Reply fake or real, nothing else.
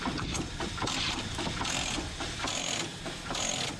real